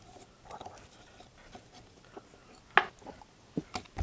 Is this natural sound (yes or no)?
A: yes